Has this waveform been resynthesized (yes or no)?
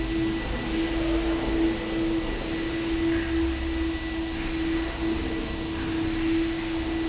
no